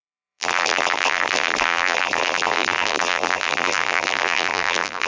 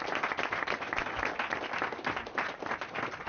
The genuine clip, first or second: second